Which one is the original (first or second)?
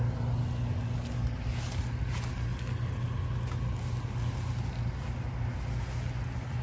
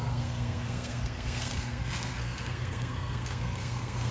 first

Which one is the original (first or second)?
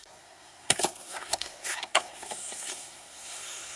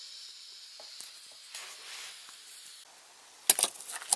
second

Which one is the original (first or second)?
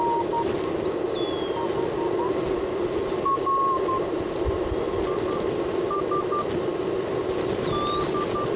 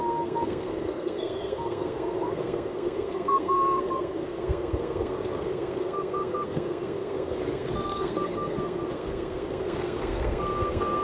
first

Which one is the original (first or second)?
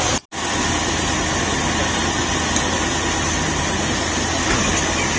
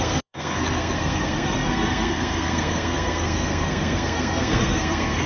first